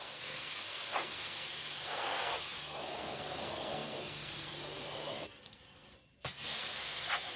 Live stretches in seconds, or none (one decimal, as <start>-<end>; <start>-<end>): none